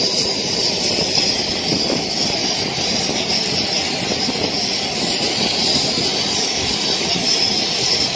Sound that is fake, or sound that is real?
real